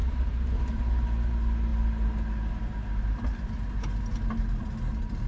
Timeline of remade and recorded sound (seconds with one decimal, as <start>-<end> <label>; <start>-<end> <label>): 0.0-0.8 remade; 0.8-5.3 recorded